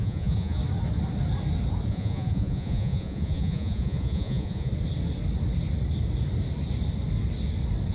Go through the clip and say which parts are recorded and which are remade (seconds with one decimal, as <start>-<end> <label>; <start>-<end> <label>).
0.0-0.6 remade; 0.6-1.9 recorded; 1.9-4.7 remade; 4.7-7.9 recorded